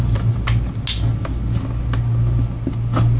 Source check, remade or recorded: recorded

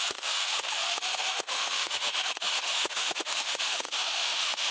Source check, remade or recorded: remade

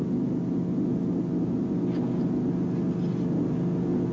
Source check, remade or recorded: recorded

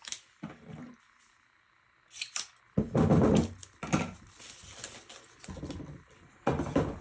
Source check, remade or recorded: recorded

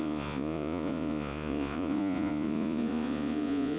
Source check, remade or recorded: remade